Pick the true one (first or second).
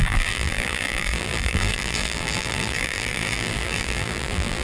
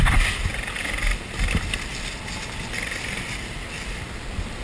second